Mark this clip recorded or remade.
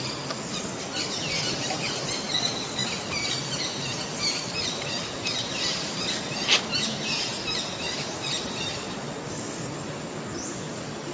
recorded